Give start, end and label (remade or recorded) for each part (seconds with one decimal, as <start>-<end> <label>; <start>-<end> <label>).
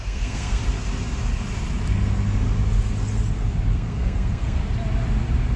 0.0-0.6 remade; 0.6-3.7 recorded; 3.7-4.6 remade; 4.6-5.6 recorded